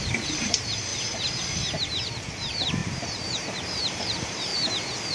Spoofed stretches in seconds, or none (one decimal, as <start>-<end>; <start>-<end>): 0.0-0.9; 2.1-4.5